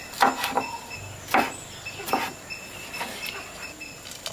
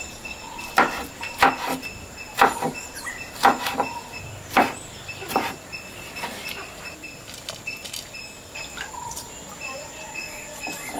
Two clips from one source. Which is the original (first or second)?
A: first